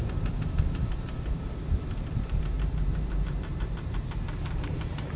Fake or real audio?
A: fake